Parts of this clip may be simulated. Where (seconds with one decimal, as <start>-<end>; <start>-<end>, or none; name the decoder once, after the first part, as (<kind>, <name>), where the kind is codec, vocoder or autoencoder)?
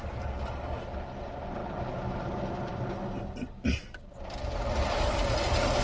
none